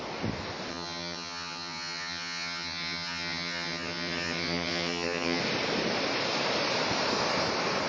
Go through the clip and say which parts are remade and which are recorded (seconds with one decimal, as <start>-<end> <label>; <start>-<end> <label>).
0.0-0.7 recorded; 0.7-5.4 remade; 5.4-7.9 recorded